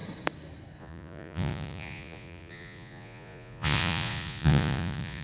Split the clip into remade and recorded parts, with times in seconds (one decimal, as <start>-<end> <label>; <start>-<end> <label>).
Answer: 0.0-0.8 recorded; 0.8-5.2 remade